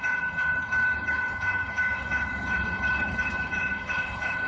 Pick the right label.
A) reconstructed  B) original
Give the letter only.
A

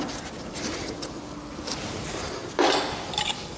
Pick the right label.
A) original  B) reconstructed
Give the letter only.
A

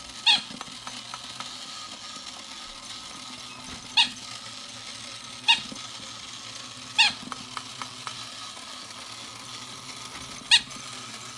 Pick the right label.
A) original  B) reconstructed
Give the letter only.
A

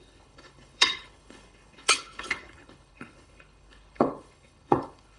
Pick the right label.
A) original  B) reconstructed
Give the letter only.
B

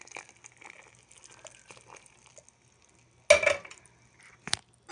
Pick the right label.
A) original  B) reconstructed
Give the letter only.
A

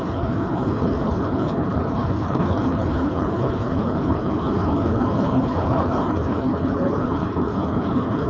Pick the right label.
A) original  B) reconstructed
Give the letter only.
B